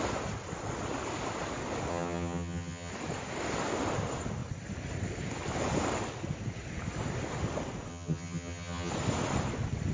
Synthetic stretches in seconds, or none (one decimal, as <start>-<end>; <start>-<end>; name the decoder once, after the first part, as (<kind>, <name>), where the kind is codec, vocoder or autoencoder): 1.9-2.9 (vocoder, HiFi-GAN); 7.9-8.9